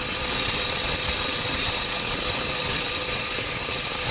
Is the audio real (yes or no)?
no